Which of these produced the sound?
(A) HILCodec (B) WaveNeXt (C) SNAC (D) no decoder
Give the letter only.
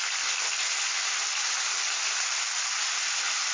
D